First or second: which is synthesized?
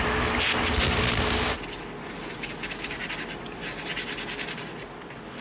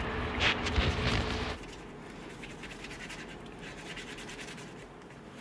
second